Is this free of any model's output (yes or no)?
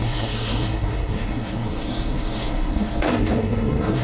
no